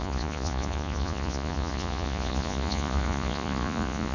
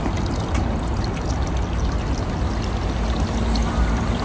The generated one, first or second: first